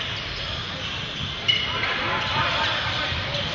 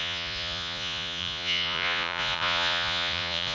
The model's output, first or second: second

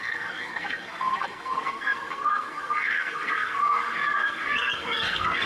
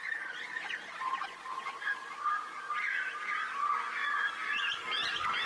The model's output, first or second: first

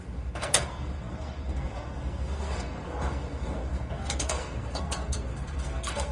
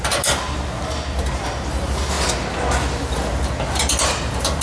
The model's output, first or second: first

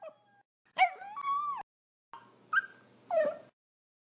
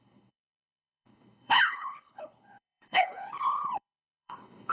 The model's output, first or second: second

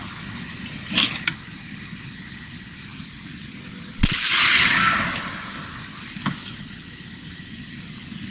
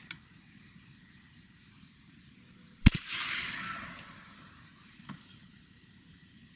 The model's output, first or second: second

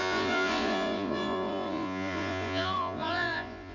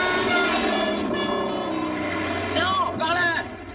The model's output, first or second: first